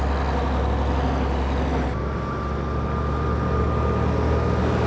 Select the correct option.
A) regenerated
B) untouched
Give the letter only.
B